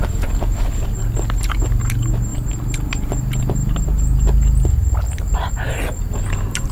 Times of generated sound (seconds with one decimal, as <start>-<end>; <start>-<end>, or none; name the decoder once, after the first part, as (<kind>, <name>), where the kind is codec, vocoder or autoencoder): none